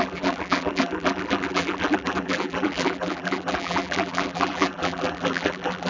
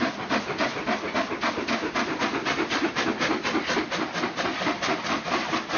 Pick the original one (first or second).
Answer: second